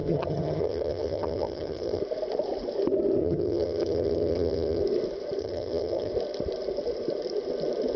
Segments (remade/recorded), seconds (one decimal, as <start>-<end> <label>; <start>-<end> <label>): 0.0-2.0 remade; 2.0-3.2 recorded; 3.2-4.8 remade; 4.8-5.4 recorded; 5.4-6.1 remade; 6.1-8.0 recorded